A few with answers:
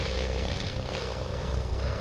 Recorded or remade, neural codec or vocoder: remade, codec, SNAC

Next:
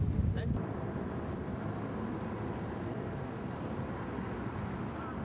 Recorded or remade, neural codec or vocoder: recorded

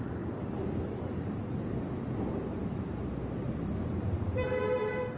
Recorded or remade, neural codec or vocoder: recorded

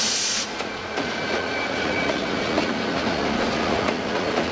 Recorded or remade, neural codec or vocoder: remade, vocoder, Vocos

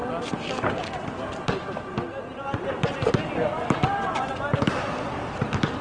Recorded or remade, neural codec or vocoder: recorded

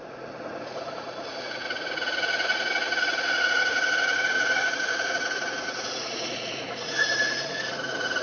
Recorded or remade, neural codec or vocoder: remade, vocoder, Vocos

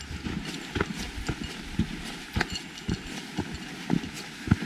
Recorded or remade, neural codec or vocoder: recorded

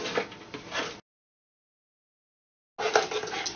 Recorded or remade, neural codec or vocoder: recorded